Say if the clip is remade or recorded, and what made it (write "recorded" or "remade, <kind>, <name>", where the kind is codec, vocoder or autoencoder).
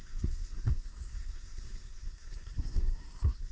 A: remade, codec, SNAC